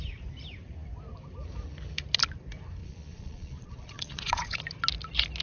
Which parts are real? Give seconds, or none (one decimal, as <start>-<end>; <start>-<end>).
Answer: 0.0-2.8; 4.6-5.4